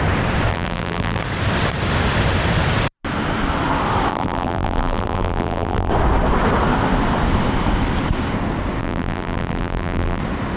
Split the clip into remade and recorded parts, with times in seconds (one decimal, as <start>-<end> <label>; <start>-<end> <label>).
0.0-0.5 recorded; 0.5-1.2 remade; 1.2-4.1 recorded; 4.1-5.9 remade; 5.9-8.8 recorded; 8.8-10.2 remade; 10.2-10.6 recorded